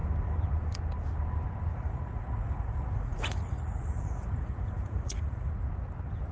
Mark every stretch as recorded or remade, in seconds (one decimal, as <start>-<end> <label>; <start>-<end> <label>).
0.0-1.7 recorded; 1.7-5.5 remade; 5.5-6.3 recorded